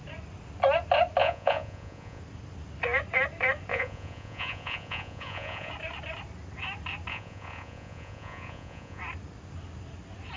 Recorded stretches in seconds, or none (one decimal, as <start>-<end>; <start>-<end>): 0.0-1.2; 2.2-3.7; 5.7-7.1; 9.0-10.4